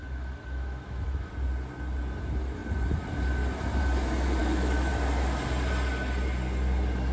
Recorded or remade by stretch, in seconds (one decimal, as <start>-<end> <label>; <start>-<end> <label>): 0.0-1.3 remade; 1.3-4.4 recorded; 4.4-4.9 remade; 4.9-7.1 recorded